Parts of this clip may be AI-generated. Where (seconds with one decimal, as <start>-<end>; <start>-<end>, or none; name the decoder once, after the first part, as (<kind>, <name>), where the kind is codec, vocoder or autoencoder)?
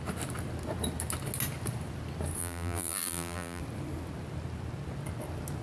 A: 2.4-3.6 (vocoder, BigVGAN v2)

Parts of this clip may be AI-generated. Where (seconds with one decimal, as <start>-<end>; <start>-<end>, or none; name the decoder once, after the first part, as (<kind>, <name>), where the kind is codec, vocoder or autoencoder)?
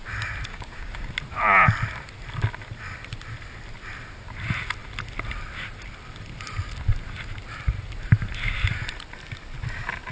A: 0.5-1.1 (codec, DAC)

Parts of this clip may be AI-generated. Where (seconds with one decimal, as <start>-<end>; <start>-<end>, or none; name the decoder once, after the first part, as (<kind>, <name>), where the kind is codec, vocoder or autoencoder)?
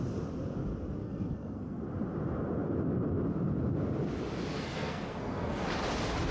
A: 1.0-1.8 (codec, SNAC); 4.5-5.6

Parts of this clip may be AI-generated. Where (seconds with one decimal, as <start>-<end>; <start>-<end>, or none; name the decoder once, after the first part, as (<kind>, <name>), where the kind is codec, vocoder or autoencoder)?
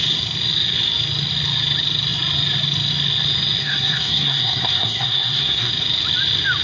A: 3.6-5.7 (codec, SNAC)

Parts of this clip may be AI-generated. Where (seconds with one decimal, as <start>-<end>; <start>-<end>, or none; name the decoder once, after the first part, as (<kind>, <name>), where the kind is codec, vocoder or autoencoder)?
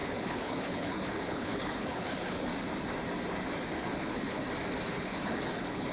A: 0.0-2.5 (codec, HILCodec); 3.8-4.4; 4.9-5.9